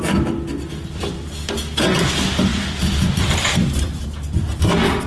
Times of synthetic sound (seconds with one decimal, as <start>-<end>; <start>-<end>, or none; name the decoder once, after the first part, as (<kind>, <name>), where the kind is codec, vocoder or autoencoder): 2.5-3.5 (vocoder, BigVGAN v2)